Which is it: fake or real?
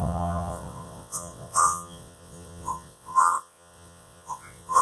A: fake